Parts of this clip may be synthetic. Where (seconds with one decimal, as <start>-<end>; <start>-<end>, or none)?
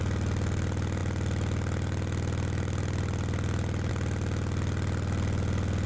none